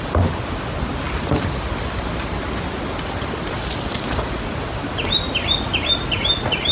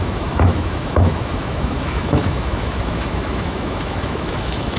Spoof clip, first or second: second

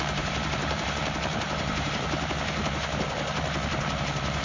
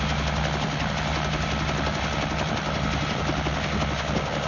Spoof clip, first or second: first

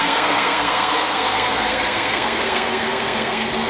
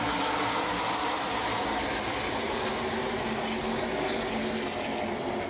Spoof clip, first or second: first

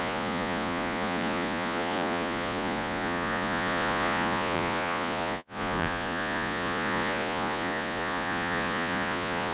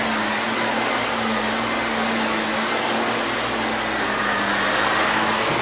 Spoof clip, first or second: first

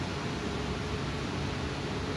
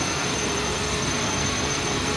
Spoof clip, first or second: second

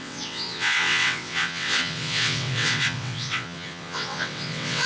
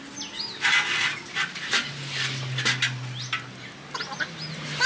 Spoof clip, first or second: first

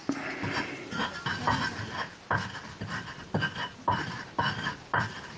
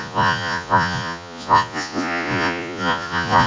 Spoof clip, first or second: second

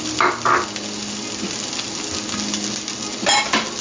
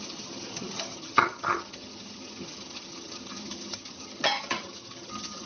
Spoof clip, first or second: second